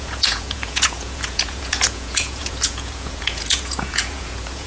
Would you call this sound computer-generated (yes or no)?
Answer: yes